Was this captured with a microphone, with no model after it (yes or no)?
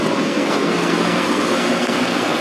no